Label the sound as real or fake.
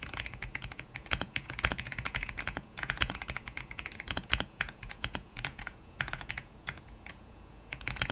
fake